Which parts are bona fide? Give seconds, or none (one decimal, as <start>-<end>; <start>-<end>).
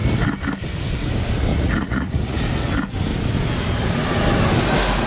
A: 0.0-1.5; 2.4-5.1